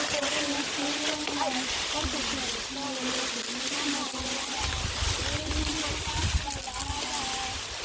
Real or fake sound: real